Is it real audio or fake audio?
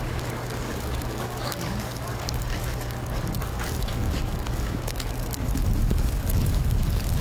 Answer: fake